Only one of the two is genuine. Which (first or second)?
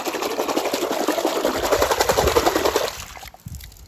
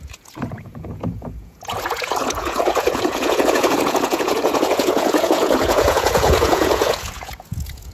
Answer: first